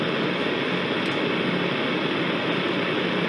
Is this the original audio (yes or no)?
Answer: yes